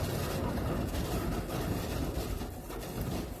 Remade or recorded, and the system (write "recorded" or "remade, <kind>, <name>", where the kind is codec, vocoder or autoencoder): recorded